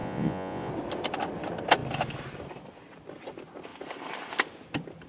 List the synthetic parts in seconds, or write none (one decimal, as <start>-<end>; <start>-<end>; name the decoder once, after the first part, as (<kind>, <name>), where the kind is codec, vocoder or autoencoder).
0.0-0.7 (vocoder, Vocos)

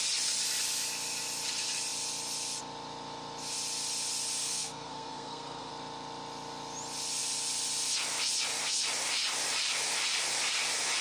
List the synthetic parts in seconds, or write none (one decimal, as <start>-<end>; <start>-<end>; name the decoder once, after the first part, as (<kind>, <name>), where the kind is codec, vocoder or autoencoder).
4.4-5.7 (codec, SNAC)